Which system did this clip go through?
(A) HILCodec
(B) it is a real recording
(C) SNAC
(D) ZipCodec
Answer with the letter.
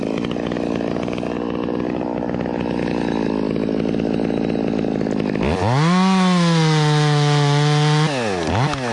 B